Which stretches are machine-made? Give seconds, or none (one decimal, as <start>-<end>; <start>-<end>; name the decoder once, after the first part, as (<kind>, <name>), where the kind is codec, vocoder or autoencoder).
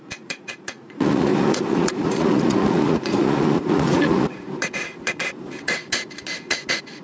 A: 0.0-7.0 (vocoder, Vocos)